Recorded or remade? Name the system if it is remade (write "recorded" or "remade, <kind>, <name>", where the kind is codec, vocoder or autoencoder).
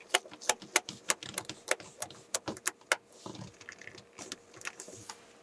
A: recorded